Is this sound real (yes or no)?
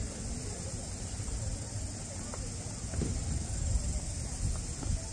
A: yes